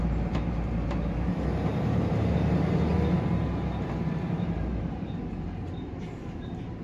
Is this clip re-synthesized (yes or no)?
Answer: yes